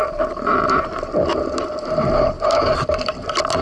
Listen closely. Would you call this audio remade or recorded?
recorded